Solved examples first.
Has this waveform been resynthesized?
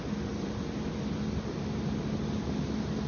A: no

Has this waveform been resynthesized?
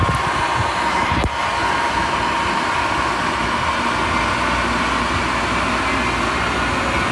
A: no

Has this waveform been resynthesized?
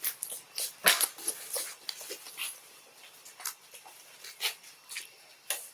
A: no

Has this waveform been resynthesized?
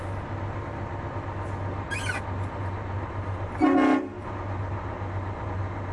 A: no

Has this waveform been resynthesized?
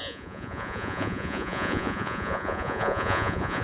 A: yes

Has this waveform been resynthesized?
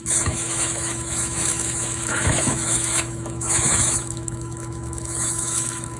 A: yes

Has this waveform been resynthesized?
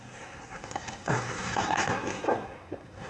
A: yes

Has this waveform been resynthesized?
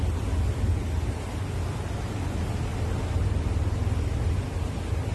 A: no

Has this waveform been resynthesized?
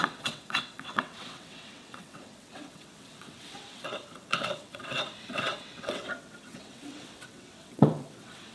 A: yes